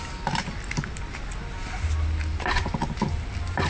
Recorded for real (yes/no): yes